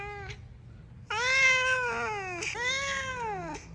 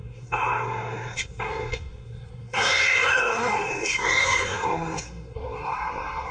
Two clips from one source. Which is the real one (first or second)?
first